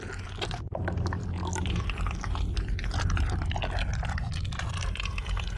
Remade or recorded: recorded